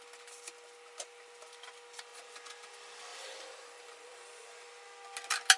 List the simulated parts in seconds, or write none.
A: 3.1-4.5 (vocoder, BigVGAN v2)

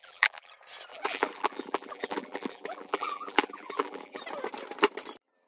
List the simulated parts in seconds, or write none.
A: 0.0-0.5 (vocoder, BigVGAN v2); 0.9-4.2